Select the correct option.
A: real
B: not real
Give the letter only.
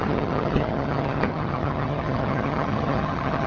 B